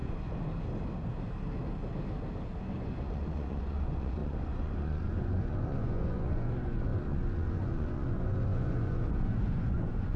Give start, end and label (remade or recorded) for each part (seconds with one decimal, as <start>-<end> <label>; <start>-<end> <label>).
0.0-2.7 recorded; 2.7-10.2 remade